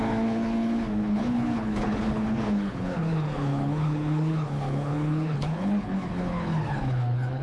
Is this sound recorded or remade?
remade